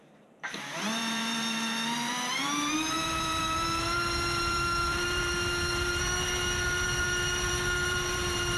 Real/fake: fake